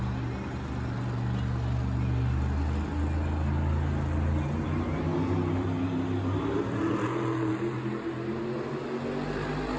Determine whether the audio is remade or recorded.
recorded